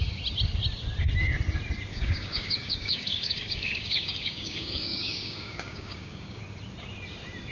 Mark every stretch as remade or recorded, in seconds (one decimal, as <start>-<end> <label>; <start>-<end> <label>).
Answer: 0.0-1.9 recorded; 1.9-6.4 remade; 6.4-7.5 recorded